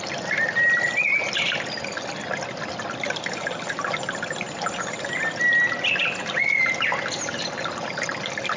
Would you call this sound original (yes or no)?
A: yes